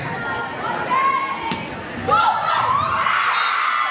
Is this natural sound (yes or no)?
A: yes